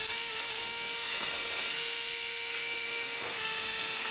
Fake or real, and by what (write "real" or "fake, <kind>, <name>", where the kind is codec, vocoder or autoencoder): fake, codec, SNAC